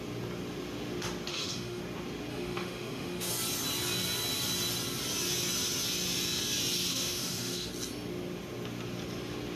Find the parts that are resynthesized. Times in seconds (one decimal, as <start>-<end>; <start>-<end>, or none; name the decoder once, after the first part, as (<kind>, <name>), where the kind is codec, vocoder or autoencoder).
1.3-1.8 (autoencoder, DAC-VAE); 2.3-3.3; 6.9-7.7